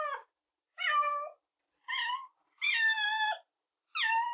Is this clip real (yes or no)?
yes